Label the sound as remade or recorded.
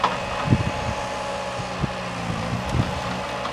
recorded